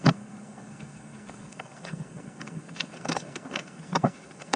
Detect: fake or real fake